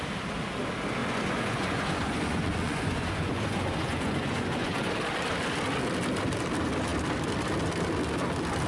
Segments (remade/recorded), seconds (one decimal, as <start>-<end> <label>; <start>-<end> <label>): 0.0-1.0 recorded; 1.0-4.9 remade; 4.9-8.7 recorded